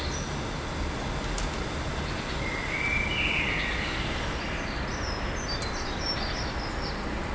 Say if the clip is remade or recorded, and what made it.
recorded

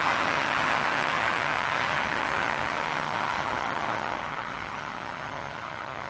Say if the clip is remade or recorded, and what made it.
remade, vocoder, HiFi-GAN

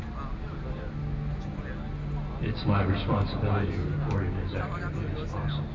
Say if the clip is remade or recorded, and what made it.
recorded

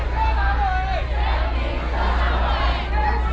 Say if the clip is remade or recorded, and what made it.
recorded